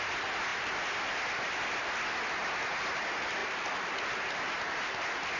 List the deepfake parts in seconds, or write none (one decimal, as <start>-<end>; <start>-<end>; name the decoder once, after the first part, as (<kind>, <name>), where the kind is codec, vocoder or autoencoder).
none